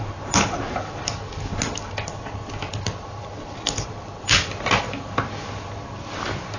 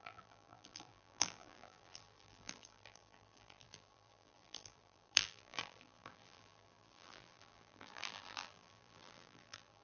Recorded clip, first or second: first